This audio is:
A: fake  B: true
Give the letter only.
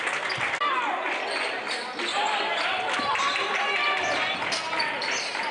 B